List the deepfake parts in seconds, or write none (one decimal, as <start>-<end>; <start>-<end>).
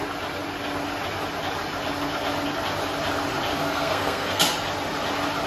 3.5-4.4